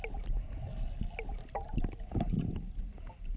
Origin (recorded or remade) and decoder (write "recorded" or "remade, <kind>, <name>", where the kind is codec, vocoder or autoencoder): recorded